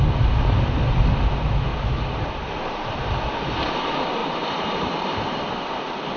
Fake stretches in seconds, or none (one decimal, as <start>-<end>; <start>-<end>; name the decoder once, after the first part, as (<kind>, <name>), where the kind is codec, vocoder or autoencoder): 1.7-3.1 (vocoder, BigVGAN v2); 4.2-5.8